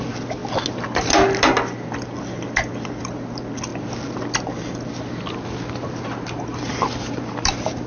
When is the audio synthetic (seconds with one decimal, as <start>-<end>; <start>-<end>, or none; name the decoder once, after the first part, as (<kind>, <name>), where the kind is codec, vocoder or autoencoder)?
6.5-7.2 (vocoder, BigVGAN v2)